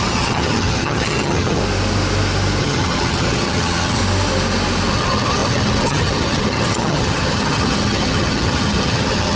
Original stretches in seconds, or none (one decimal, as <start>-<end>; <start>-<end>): 1.6-2.6; 4.0-4.9